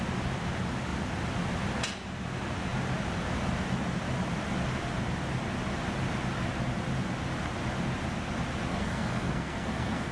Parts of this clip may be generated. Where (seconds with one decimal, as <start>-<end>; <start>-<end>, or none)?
8.7-10.1